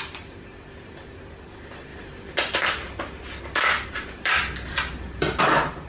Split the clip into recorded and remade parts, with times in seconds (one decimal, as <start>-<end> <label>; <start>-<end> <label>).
0.0-1.9 recorded; 1.9-5.4 remade; 5.4-5.9 recorded